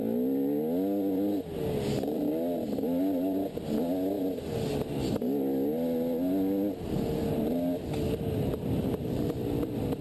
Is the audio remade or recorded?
recorded